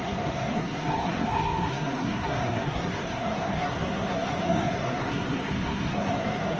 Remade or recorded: remade